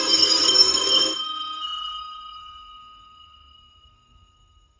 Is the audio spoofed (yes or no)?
yes